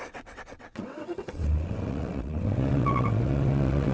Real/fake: fake